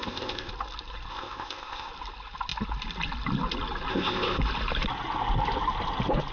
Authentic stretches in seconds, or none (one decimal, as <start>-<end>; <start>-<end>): 0.5-1.1; 1.9-3.9; 4.4-6.3